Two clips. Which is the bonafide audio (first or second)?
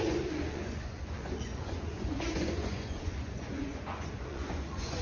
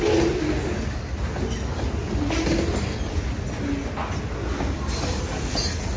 second